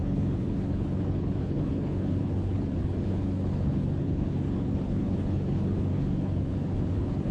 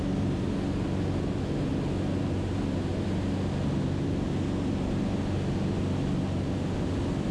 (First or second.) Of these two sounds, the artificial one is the first